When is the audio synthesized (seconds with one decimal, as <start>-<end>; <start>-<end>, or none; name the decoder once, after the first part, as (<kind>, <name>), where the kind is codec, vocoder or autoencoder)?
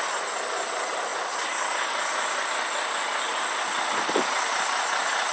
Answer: none